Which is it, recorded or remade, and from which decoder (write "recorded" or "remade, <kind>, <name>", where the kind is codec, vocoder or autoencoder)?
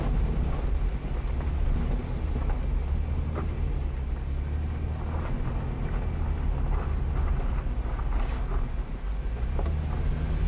recorded